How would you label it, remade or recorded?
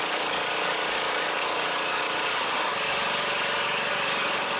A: remade